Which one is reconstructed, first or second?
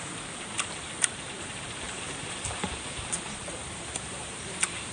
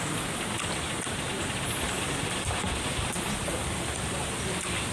first